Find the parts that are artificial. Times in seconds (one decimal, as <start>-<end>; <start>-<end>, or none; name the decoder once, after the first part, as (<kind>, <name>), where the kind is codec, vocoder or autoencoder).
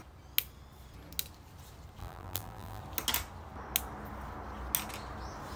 2.0-2.8 (vocoder, BigVGAN v2)